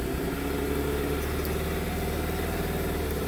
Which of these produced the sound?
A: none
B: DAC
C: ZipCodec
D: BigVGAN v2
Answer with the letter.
A